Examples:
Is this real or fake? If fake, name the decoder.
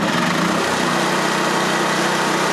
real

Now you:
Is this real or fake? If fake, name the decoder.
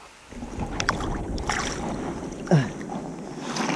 real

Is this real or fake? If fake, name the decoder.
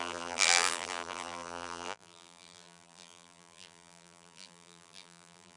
fake, vocoder, BigVGAN v2